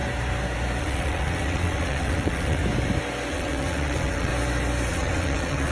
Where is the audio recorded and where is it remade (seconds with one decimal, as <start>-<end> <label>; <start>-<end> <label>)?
0.0-0.8 recorded; 0.8-2.6 remade; 2.6-3.3 recorded; 3.3-4.3 remade; 4.3-4.9 recorded; 4.9-5.7 remade